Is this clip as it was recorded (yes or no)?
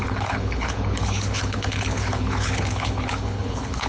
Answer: no